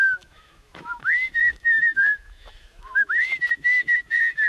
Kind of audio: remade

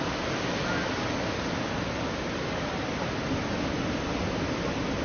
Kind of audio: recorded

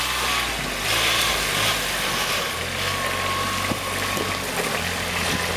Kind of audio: recorded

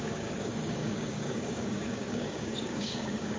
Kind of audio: remade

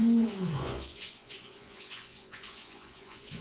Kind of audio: remade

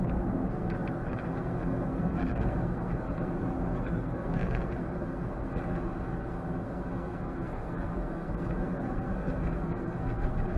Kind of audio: remade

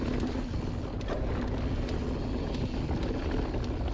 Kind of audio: recorded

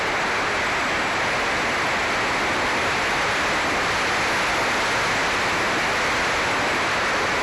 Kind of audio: recorded